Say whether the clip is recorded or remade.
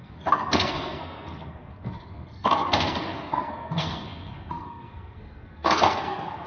remade